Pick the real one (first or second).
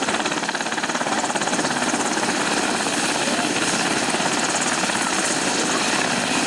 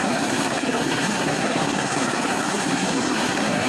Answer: first